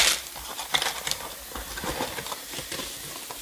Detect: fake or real real